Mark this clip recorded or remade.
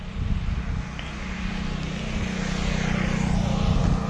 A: recorded